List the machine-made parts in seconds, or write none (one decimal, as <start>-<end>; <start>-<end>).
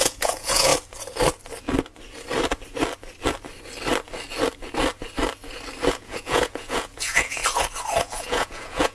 0.0-0.7; 5.9-7.4; 8.0-8.9